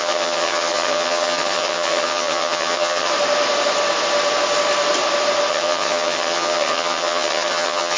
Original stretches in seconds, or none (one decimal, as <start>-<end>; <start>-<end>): 3.1-5.5

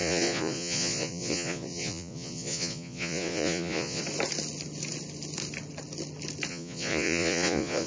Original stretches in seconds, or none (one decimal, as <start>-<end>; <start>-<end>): 4.0-6.5